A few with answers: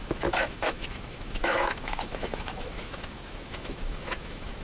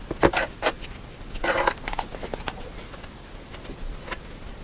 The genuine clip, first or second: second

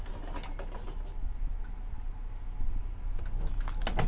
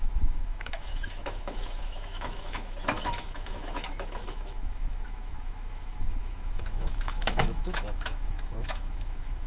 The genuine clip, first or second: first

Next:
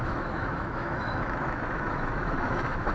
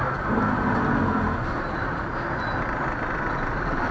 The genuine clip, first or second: second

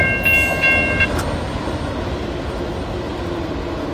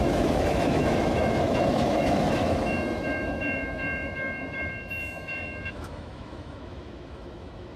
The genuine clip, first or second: first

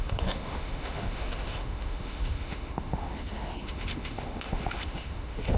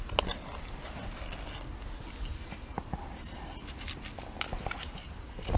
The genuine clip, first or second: second